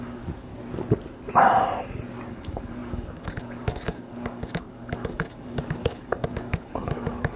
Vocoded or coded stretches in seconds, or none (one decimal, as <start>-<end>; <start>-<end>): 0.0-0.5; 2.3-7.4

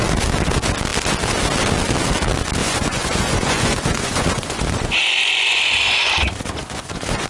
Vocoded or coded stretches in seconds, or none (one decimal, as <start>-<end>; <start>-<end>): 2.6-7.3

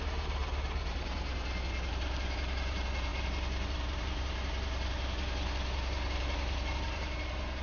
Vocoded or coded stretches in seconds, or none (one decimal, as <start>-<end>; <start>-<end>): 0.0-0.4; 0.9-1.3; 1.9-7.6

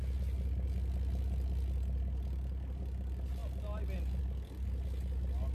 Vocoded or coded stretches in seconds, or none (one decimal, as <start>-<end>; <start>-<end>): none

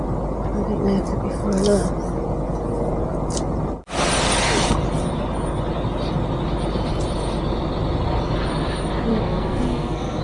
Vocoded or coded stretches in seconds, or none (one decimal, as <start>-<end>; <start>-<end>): 9.1-10.2